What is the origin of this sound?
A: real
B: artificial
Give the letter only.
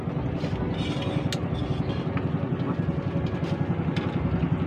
A